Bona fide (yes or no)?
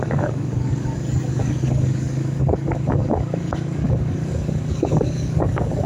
no